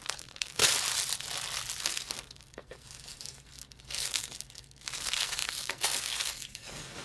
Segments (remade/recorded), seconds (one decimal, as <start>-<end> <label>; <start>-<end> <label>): 0.0-0.6 remade; 0.6-1.8 recorded; 1.8-7.0 remade